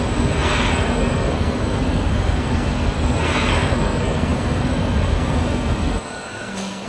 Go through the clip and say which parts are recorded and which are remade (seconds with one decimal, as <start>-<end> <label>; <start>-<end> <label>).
0.0-6.9 remade